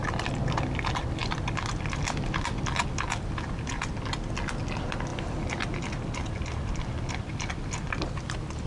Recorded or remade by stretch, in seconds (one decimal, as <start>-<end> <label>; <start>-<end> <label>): 0.0-8.7 recorded